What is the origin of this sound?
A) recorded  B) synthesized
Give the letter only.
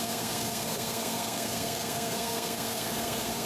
B